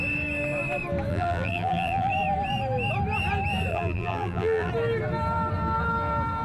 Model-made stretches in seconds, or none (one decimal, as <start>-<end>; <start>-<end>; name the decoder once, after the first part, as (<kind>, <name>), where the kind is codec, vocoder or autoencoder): 1.1-2.1 (vocoder, BigVGAN v2); 3.7-4.7